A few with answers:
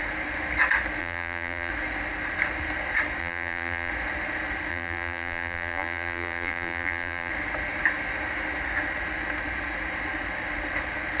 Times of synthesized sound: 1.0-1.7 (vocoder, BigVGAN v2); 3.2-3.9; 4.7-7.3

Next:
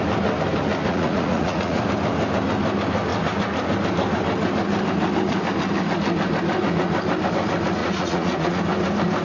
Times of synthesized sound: 0.9-1.8 (vocoder, Vocos); 7.8-8.6

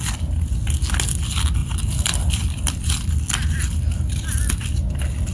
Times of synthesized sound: 1.6-3.0 (vocoder, BigVGAN v2)

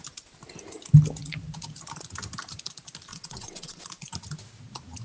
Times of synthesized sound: 3.1-3.8 (vocoder, WaveNeXt)

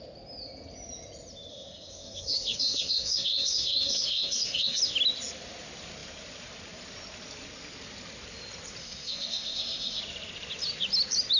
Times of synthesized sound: 1.5-4.8 (codec, SNAC); 8.8-10.0

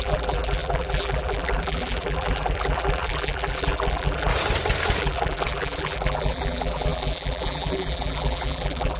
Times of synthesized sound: 0.0-4.3 (vocoder, BigVGAN v2); 5.0-9.0

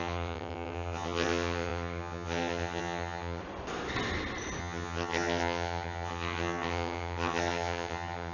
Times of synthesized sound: 0.0-3.4 (vocoder, HiFi-GAN); 4.6-8.3